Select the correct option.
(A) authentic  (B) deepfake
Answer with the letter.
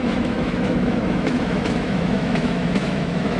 B